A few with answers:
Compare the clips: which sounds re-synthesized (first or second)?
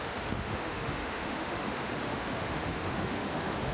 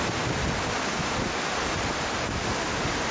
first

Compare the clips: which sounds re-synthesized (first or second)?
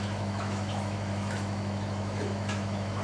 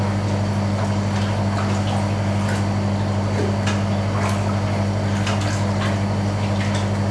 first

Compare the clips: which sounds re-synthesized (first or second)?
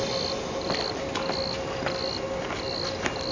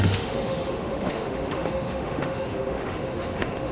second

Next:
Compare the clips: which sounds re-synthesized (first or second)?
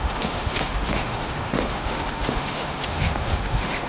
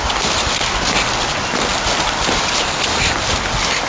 first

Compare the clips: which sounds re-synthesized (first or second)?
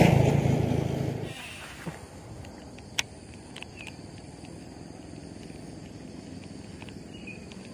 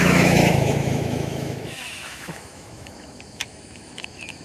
second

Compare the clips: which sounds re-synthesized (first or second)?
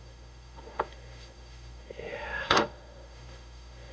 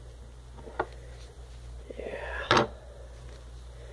first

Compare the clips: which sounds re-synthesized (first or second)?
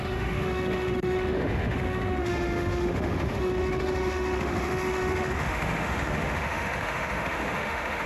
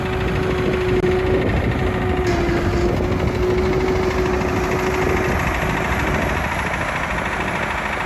first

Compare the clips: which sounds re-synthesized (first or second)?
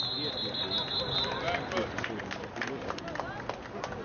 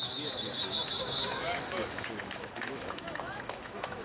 second